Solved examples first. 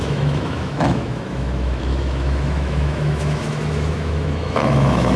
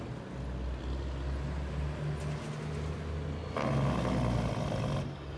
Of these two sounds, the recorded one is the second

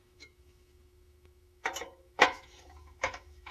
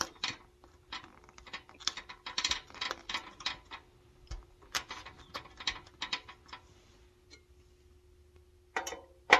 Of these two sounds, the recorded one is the second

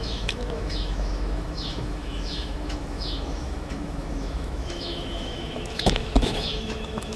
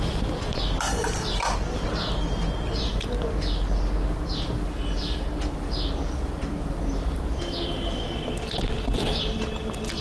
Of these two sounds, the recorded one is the second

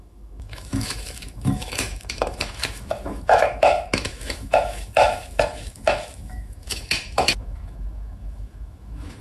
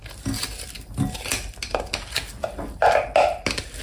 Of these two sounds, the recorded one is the second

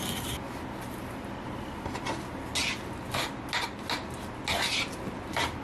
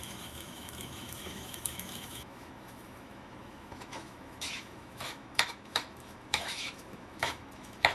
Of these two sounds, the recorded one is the first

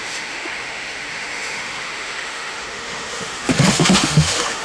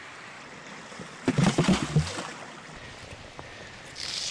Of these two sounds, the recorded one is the second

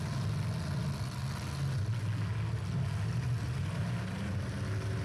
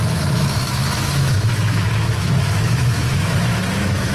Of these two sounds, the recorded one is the first